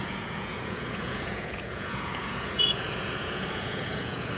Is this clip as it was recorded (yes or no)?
no